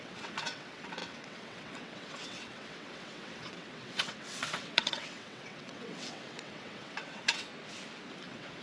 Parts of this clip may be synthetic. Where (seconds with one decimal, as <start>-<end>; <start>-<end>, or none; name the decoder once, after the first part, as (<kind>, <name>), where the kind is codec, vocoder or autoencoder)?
0.0-7.5 (vocoder, WaveNeXt); 8.2-8.6